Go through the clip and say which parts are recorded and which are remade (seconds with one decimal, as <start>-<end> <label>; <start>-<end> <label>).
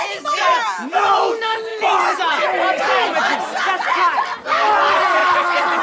0.0-5.2 recorded; 5.2-5.8 remade